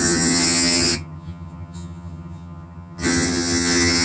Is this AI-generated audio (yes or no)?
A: yes